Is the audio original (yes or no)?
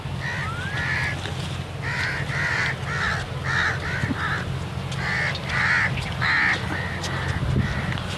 yes